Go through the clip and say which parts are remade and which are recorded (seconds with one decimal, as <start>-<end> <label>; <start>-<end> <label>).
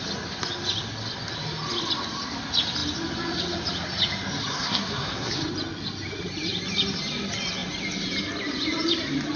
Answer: 0.0-4.5 recorded; 4.5-5.3 remade; 5.3-9.4 recorded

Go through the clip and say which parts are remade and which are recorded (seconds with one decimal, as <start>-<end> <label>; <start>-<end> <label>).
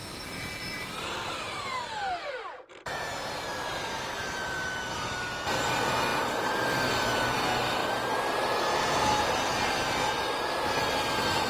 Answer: 0.0-3.7 remade; 3.7-6.1 recorded; 6.1-6.7 remade; 6.7-11.5 recorded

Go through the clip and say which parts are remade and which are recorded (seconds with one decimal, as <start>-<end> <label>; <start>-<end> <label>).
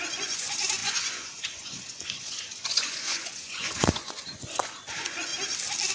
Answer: 0.0-5.3 remade; 5.3-5.9 recorded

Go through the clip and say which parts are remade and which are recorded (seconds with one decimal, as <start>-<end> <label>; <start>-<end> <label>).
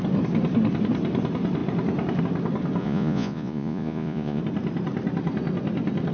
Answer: 0.0-2.8 recorded; 2.8-4.4 remade; 4.4-6.1 recorded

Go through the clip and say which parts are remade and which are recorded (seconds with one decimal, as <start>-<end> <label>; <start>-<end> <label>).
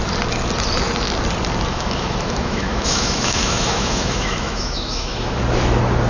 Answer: 0.0-1.7 recorded; 1.7-5.4 remade; 5.4-6.1 recorded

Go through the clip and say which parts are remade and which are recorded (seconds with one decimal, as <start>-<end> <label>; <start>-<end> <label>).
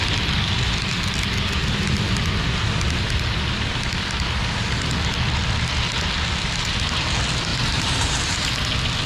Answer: 0.0-7.5 recorded; 7.5-8.5 remade; 8.5-9.1 recorded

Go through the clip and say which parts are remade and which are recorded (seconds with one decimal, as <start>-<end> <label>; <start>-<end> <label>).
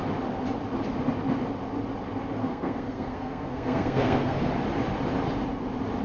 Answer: 0.0-2.4 recorded; 2.4-4.5 remade; 4.5-6.0 recorded